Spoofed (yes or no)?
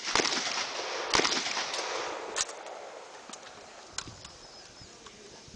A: no